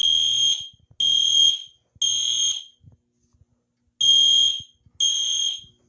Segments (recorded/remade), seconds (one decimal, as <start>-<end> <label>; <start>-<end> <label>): 0.0-5.9 recorded